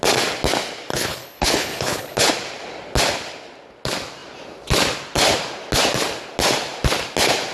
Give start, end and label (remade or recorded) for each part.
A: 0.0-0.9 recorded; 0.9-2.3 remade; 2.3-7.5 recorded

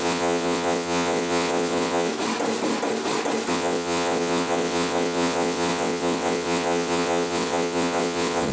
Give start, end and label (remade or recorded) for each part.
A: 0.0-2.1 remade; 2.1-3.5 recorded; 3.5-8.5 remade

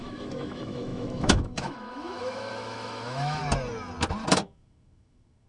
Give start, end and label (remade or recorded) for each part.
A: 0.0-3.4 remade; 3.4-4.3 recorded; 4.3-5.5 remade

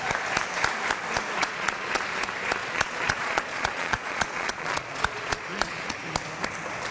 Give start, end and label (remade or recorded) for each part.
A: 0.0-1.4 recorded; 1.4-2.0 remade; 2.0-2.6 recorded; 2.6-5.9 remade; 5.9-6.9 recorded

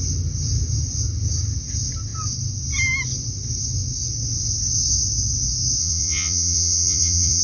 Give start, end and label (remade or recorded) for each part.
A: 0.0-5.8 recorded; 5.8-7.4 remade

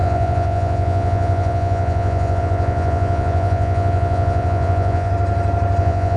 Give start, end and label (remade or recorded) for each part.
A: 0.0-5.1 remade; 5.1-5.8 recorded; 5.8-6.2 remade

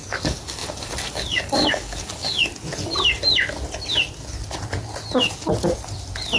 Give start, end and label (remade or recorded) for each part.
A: 0.0-2.5 remade; 2.5-6.4 recorded